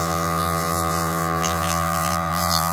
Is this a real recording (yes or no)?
no